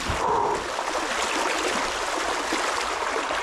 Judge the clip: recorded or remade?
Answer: recorded